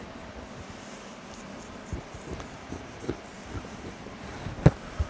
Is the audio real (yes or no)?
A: no